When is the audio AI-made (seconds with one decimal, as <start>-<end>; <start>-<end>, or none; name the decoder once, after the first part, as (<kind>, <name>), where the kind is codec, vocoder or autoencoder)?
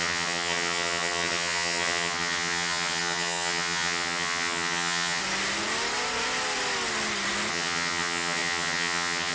0.0-5.2 (vocoder, HiFi-GAN); 7.5-9.3